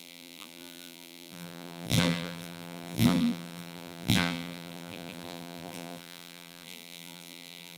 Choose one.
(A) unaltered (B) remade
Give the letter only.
B